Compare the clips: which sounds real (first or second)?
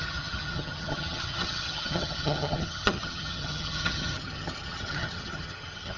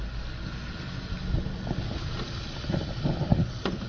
second